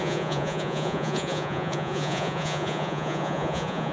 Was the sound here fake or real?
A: fake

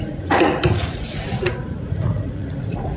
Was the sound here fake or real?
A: fake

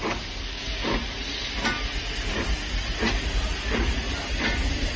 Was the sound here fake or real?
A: real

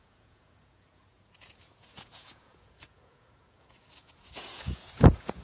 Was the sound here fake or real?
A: fake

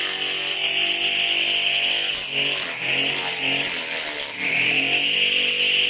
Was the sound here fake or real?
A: real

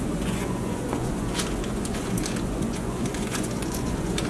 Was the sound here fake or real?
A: fake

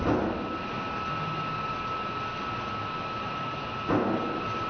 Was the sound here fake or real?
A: real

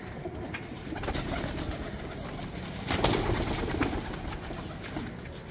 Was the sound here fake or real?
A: real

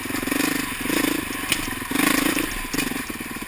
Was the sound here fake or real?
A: real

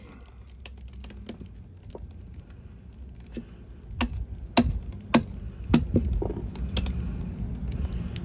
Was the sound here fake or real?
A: real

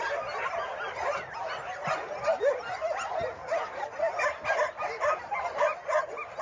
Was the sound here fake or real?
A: real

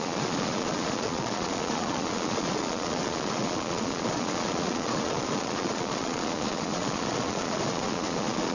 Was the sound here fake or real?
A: fake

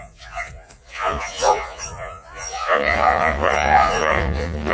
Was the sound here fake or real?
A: fake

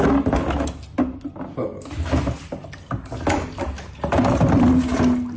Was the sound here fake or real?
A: real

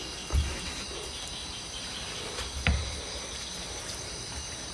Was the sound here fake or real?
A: real